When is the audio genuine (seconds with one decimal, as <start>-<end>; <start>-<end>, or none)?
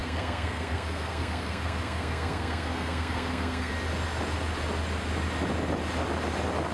3.7-6.7